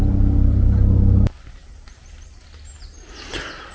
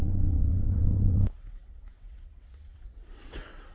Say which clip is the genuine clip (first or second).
first